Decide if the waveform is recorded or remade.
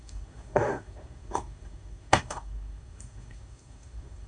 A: remade